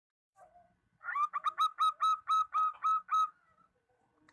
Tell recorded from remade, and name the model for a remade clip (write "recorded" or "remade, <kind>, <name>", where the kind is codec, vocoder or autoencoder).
recorded